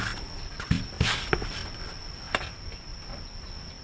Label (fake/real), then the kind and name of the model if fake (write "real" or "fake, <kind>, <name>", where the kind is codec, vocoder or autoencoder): real